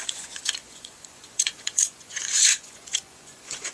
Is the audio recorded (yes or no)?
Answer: no